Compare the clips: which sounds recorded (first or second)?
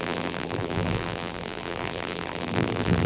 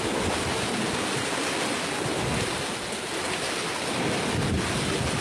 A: second